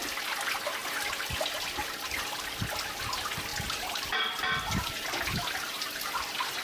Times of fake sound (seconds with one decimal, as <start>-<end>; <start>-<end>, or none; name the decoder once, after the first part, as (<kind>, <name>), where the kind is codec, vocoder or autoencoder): none